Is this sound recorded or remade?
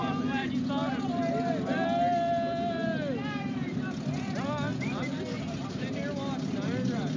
recorded